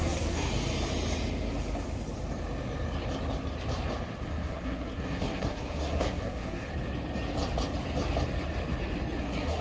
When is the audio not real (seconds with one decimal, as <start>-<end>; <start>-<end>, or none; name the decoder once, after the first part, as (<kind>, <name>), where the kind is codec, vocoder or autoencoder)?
0.0-0.5 (codec, SNAC); 4.2-6.7; 9.2-9.6